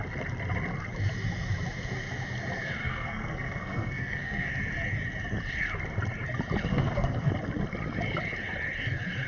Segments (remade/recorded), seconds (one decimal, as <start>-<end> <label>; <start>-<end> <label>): 0.0-2.8 recorded; 2.8-4.5 remade; 4.5-6.7 recorded; 6.7-7.3 remade; 7.3-9.3 recorded